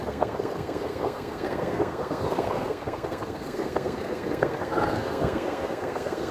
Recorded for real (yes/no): no